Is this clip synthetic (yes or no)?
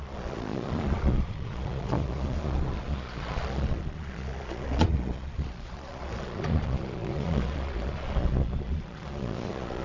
yes